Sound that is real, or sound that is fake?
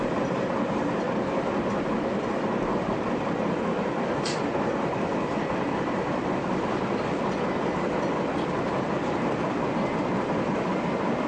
fake